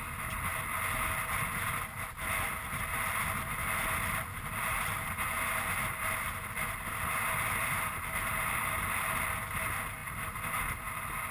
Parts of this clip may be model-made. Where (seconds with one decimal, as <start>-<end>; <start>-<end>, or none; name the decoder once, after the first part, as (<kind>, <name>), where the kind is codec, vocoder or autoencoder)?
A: none